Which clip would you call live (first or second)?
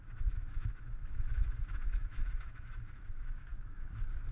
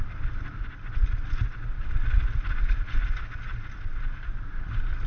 second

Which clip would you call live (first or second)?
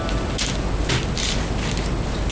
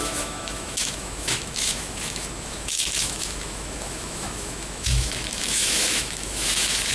first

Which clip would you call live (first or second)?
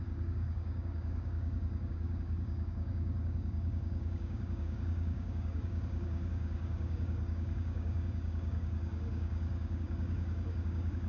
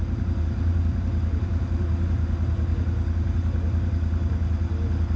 second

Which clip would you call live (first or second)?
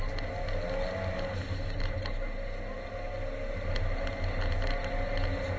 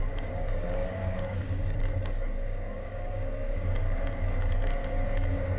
first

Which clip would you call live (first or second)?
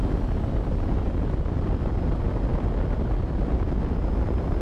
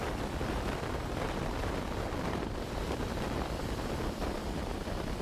first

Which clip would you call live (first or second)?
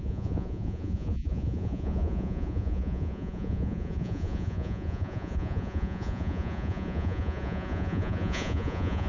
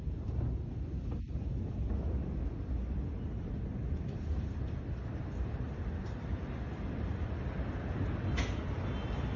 second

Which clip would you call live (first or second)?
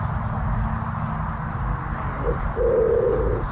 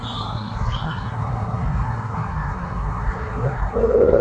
first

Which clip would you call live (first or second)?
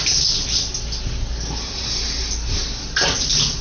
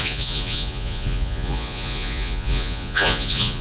first